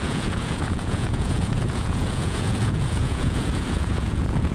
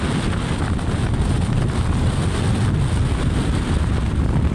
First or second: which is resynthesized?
first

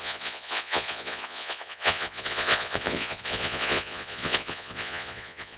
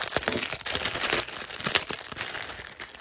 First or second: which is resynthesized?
first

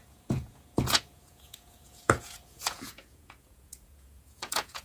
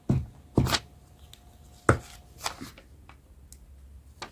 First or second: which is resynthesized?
first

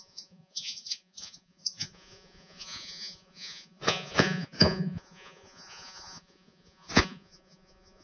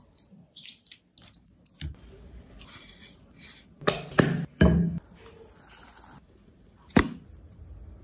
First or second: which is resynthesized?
first